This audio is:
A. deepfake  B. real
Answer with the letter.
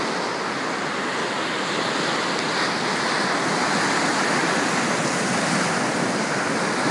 B